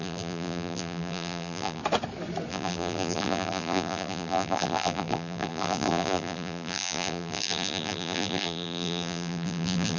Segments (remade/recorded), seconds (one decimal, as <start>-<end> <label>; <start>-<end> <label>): 0.0-1.8 remade; 1.8-2.5 recorded; 2.5-10.0 remade